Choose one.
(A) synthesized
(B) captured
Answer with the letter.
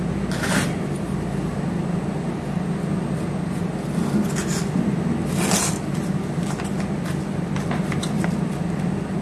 B